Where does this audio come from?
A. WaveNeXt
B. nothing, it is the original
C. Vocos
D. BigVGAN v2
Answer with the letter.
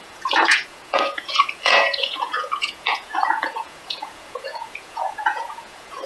C